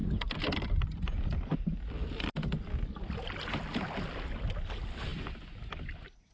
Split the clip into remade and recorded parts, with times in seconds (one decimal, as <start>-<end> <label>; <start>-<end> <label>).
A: 0.0-6.3 recorded